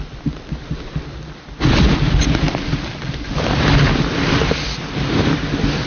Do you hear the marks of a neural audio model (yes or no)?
no